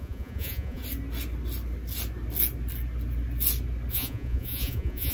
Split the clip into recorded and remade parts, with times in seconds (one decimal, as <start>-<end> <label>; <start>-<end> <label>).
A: 0.0-0.8 remade; 0.8-3.9 recorded; 3.9-5.1 remade